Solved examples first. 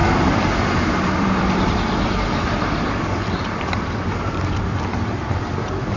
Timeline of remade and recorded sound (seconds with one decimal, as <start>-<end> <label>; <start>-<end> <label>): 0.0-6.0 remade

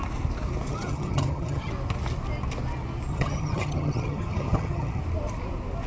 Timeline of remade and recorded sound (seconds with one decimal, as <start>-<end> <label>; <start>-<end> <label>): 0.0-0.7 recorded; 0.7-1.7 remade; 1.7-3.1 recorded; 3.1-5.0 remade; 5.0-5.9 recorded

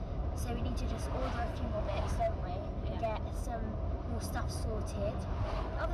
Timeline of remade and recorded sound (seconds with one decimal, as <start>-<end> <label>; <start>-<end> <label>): 0.0-2.4 remade; 2.4-5.9 recorded

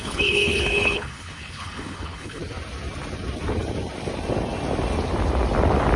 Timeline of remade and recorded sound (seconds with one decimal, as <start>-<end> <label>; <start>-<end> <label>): 0.0-2.4 remade; 2.4-6.0 recorded

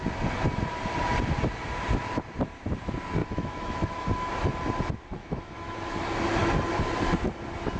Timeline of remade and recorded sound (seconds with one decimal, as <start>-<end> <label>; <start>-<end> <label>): 0.0-3.2 recorded; 3.2-4.3 remade; 4.3-5.2 recorded; 5.2-5.9 remade; 5.9-7.8 recorded

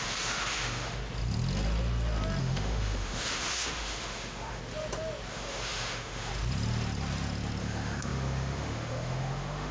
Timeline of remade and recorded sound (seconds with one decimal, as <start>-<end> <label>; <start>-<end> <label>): 0.0-1.0 remade; 1.0-2.4 recorded; 2.4-4.6 remade; 4.6-5.3 recorded; 5.3-6.3 remade; 6.3-7.6 recorded; 7.6-9.7 remade

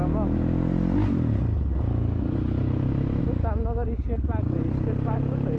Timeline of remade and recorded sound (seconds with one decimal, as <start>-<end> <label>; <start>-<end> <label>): 0.0-5.6 recorded

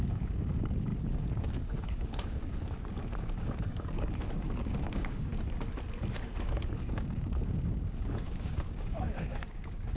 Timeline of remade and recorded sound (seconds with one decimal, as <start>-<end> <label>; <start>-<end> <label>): 0.0-5.3 remade; 5.3-6.6 recorded; 6.6-10.0 remade